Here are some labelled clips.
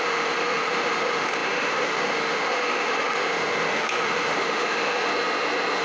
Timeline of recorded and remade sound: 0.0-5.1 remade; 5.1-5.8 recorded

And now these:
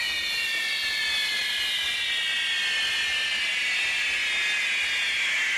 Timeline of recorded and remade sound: 0.0-5.6 recorded

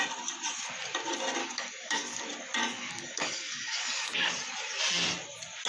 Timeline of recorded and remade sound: 0.0-1.4 recorded; 1.4-2.2 remade; 2.2-2.6 recorded; 2.6-4.3 remade; 4.3-5.7 recorded